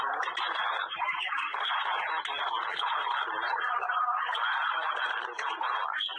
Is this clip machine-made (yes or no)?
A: no